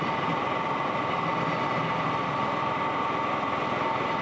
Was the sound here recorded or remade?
recorded